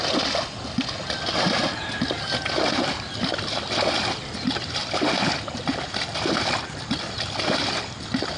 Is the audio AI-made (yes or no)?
no